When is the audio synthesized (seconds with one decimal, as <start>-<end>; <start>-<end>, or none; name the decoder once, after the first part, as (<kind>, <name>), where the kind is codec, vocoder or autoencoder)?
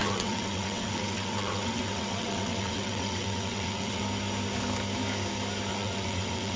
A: 0.0-4.0 (vocoder, WaveNeXt); 5.7-6.6